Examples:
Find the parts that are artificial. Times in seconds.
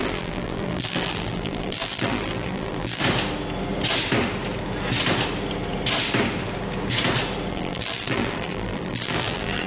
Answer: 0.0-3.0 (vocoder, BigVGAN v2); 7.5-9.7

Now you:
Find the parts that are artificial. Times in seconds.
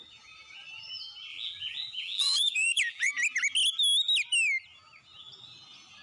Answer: 1.3-3.1 (vocoder, BigVGAN v2)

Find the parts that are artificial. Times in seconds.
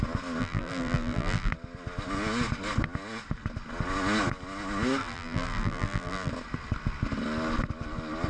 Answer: 0.4-1.5 (vocoder, BigVGAN v2); 5.0-6.3